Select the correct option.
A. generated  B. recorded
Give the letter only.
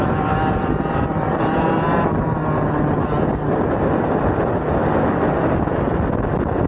B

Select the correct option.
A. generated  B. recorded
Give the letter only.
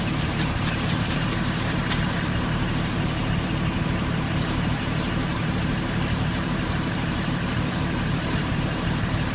A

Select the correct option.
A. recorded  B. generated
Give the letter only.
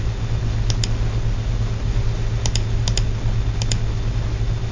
A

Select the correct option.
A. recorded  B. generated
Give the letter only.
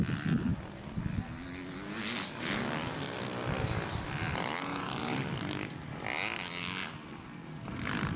A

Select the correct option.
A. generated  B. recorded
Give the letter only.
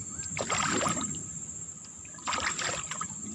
B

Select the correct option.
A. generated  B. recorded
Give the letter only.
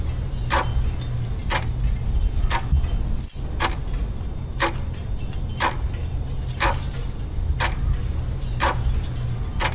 B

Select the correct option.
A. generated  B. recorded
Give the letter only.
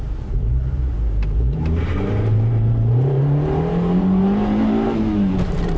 A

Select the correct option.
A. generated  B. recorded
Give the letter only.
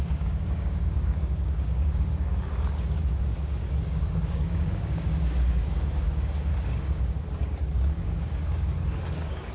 A